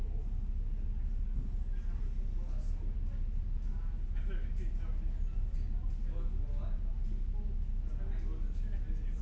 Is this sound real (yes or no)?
yes